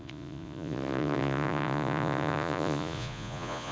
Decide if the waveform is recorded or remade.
remade